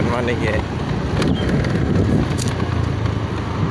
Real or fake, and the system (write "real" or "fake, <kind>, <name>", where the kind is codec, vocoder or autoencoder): real